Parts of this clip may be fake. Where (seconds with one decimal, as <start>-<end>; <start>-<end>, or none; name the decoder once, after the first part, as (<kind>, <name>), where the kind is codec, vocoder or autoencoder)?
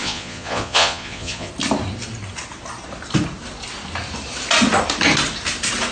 0.0-1.5 (vocoder, Vocos)